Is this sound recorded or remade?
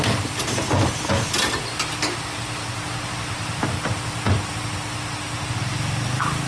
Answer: recorded